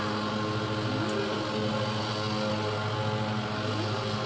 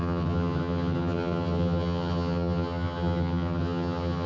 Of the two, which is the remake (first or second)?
second